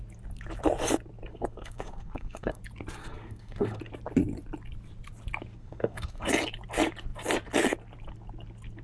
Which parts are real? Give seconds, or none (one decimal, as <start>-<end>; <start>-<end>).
0.0-1.3; 2.6-3.0; 3.8-5.6; 6.3-8.8